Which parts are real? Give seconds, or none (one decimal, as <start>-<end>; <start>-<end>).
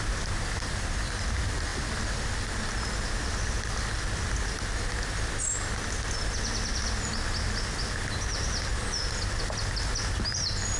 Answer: 0.0-10.8